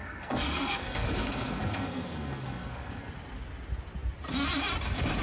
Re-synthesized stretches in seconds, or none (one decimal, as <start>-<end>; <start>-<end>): 0.0-3.1